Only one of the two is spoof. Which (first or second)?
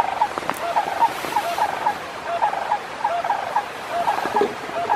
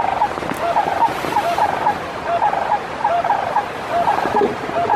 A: first